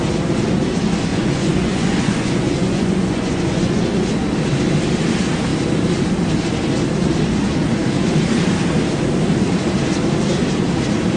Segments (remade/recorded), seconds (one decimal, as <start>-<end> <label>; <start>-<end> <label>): 0.0-1.1 recorded; 1.1-3.8 remade; 3.8-11.2 recorded